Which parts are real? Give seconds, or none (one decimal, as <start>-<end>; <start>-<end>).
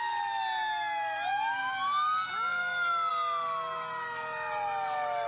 0.0-5.3